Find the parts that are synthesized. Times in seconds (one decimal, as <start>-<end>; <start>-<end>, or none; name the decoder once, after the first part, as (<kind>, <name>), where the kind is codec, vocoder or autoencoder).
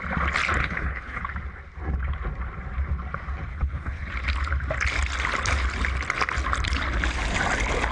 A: 0.6-1.2 (codec, HILCodec); 3.5-4.1